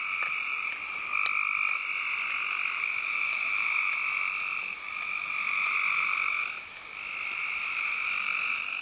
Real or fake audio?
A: real